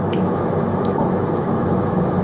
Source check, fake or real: fake